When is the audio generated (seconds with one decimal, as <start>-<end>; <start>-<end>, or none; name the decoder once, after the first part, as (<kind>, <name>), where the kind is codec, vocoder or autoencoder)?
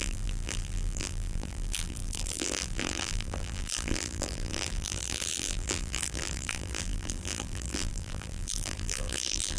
0.0-9.6 (vocoder, BigVGAN v2)